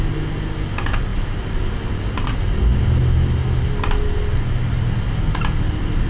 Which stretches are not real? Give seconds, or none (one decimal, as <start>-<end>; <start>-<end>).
none